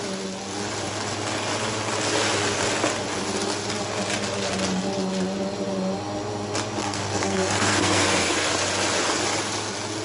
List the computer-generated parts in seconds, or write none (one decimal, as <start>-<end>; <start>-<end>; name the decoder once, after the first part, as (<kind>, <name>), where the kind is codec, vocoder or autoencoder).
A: 6.8-8.5 (codec, SNAC)